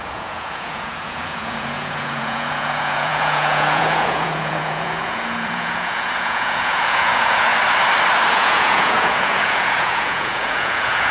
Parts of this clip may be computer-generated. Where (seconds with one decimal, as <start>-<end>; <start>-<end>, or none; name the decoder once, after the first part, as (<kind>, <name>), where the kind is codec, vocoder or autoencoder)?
0.0-7.5 (vocoder, Vocos); 8.3-11.1